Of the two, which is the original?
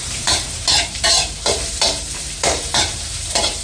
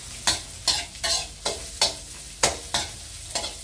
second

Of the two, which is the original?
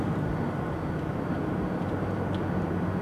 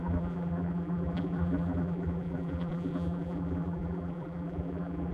first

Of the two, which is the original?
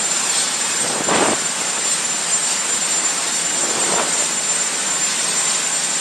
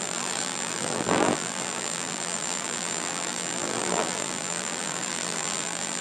first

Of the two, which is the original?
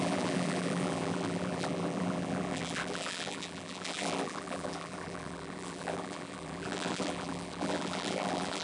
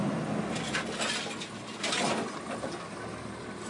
second